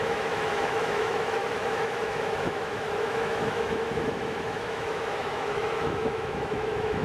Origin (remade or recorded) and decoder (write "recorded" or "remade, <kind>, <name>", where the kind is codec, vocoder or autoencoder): remade, autoencoder, DAC-VAE